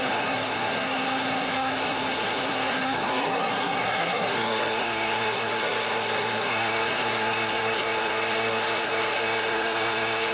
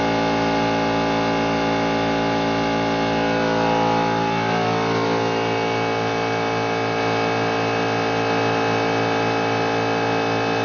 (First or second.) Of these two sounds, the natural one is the second